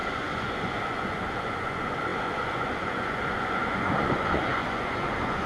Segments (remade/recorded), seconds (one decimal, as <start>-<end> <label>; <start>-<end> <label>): 0.0-5.5 remade